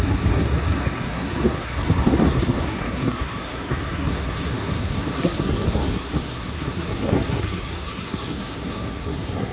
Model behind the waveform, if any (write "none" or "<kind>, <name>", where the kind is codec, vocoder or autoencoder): codec, SNAC